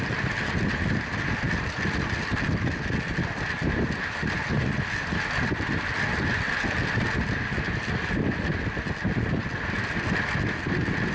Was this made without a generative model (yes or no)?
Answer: yes